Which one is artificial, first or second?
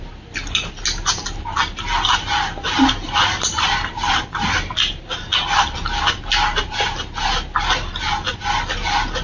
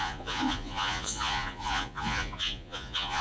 second